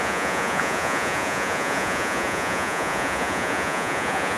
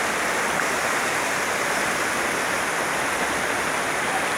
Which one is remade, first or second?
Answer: first